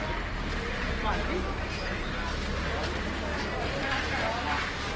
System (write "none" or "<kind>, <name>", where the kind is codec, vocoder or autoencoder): none